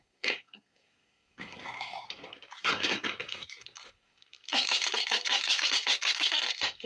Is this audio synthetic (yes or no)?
yes